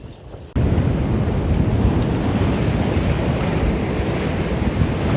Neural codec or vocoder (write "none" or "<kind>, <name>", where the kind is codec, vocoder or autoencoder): none